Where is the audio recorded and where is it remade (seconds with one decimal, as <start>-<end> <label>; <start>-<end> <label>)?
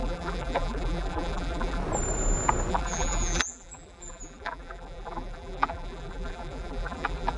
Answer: 0.0-1.8 remade; 1.8-2.7 recorded; 2.7-7.4 remade